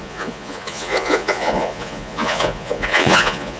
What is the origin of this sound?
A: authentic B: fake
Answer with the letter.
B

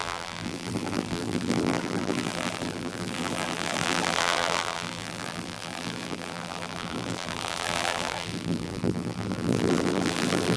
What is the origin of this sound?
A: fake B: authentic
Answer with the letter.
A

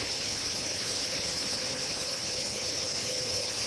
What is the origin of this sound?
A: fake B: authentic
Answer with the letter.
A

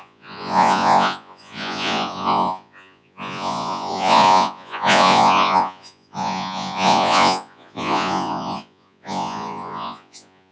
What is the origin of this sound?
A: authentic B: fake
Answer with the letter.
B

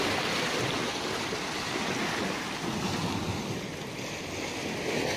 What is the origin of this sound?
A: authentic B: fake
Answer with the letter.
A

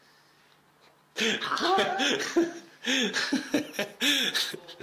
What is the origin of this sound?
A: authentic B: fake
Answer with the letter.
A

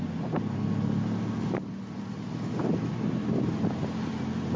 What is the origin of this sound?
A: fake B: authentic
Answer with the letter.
B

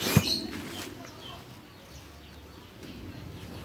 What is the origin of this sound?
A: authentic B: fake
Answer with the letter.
A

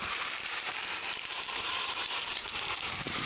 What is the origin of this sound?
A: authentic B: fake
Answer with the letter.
B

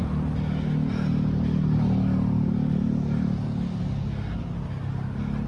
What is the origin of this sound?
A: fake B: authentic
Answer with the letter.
B